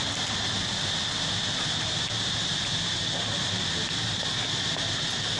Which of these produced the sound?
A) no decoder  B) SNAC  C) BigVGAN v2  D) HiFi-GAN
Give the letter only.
A